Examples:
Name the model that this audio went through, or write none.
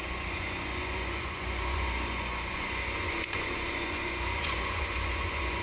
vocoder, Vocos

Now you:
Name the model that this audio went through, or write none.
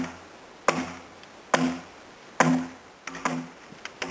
none